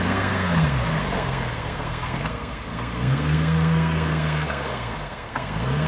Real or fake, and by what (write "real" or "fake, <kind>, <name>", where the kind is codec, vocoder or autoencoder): fake, codec, SNAC